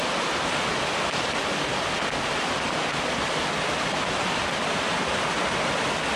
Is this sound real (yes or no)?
yes